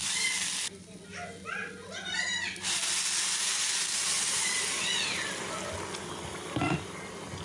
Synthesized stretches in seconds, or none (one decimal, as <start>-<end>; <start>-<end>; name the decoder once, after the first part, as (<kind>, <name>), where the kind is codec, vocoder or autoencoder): none